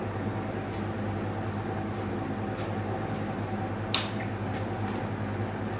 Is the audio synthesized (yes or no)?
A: no